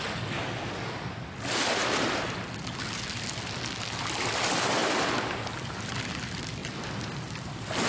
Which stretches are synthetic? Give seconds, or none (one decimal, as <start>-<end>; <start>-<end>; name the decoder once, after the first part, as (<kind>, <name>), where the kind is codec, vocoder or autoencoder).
none